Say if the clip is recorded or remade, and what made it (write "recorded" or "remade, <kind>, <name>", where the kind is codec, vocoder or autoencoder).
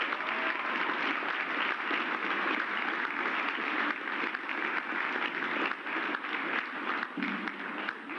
recorded